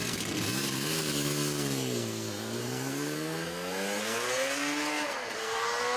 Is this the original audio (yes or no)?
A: no